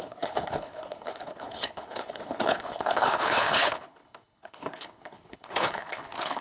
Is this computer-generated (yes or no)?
yes